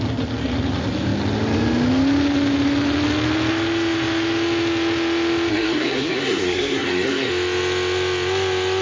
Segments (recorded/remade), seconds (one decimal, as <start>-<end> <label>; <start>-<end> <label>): 0.0-5.5 recorded; 5.5-7.3 remade; 7.3-8.8 recorded